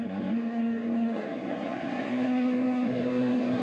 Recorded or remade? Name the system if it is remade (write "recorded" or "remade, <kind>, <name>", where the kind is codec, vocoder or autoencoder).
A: remade, codec, SNAC